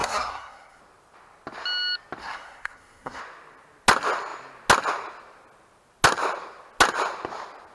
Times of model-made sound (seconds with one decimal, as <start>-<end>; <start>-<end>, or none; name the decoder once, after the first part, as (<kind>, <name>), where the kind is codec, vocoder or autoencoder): 0.0-0.8 (codec, SNAC); 2.2-3.2